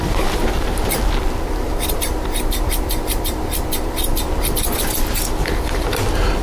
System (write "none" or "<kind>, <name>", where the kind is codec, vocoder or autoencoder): vocoder, BigVGAN v2